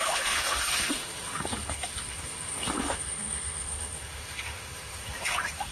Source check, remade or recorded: remade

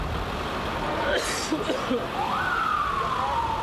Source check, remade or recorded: recorded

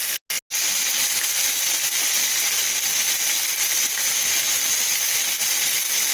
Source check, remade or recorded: recorded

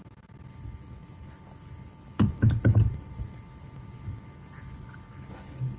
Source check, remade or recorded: recorded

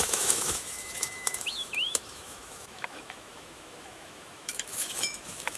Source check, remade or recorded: remade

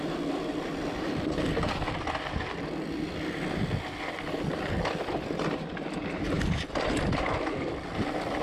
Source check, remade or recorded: recorded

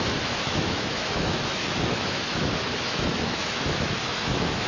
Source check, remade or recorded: remade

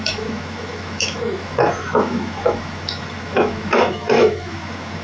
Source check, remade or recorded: remade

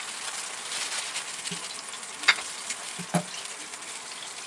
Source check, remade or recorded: recorded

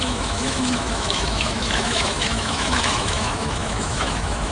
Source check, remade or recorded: remade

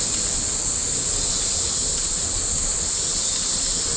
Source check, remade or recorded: recorded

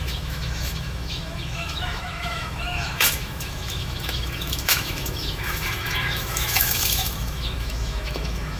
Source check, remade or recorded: remade